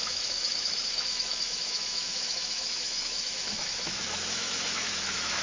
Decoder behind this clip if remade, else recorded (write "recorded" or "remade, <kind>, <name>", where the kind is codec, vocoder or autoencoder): remade, autoencoder, DAC-VAE